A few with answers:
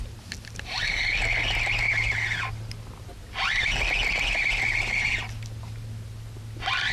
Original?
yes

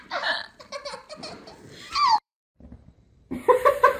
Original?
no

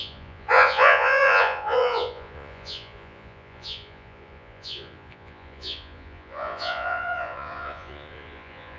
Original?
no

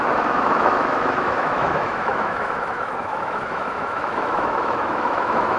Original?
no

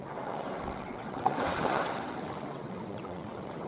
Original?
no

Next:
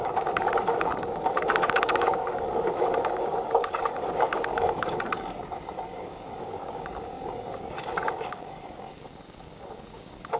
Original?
no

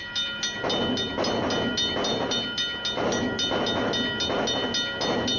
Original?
yes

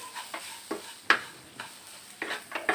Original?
yes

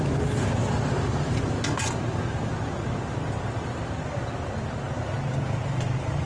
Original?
yes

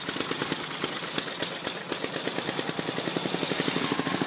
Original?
yes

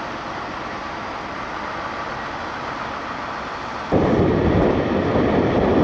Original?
yes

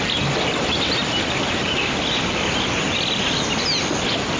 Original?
yes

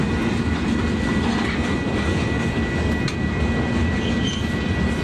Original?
yes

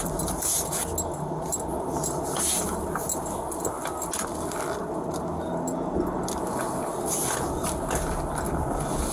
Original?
yes